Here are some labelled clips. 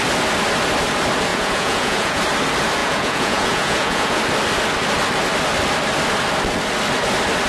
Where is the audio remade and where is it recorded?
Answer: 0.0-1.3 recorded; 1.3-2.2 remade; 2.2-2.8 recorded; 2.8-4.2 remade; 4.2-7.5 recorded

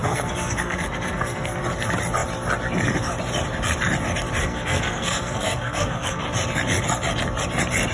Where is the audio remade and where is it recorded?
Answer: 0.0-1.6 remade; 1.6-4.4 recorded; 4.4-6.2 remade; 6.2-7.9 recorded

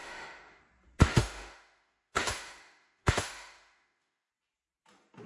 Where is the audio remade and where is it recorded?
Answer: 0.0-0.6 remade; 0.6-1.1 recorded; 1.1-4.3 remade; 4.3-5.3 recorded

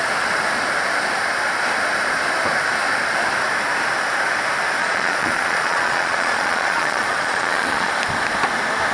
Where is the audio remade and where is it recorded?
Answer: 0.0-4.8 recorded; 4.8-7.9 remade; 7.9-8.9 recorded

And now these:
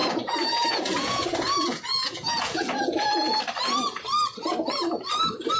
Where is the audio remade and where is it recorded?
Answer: 0.0-3.4 remade; 3.4-5.6 recorded

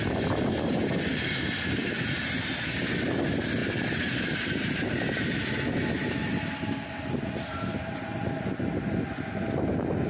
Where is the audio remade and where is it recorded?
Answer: 0.0-10.1 recorded

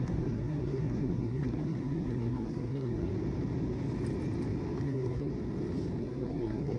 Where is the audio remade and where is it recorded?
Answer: 0.0-3.1 remade; 3.1-4.8 recorded; 4.8-5.3 remade; 5.3-6.0 recorded; 6.0-6.8 remade